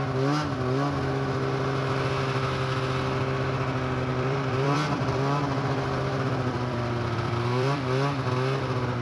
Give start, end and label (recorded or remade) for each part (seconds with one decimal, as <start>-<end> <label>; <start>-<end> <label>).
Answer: 0.0-4.1 recorded; 4.1-7.8 remade; 7.8-9.0 recorded